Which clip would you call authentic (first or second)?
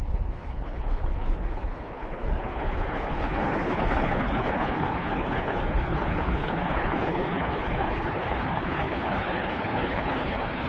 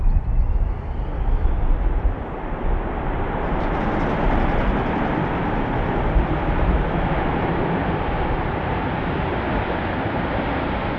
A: second